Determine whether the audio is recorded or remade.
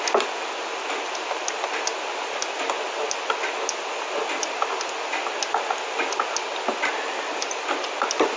recorded